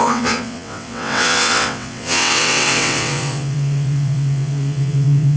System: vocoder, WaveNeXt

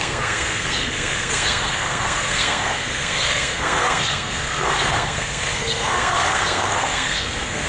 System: codec, SNAC